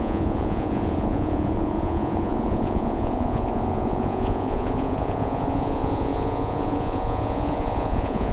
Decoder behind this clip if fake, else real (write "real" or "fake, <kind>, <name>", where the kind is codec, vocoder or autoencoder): fake, vocoder, Vocos